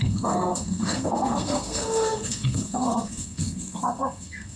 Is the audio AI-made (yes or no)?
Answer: yes